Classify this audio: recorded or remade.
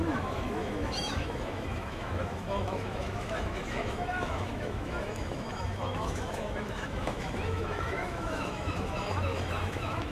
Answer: remade